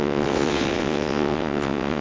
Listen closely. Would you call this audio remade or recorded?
remade